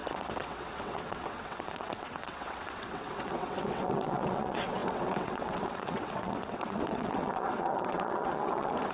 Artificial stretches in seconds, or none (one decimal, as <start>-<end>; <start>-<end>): 0.0-8.9